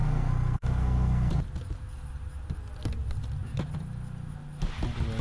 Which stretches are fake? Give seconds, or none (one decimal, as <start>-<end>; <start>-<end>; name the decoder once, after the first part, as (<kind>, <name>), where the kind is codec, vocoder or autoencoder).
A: 0.0-1.3 (codec, SNAC)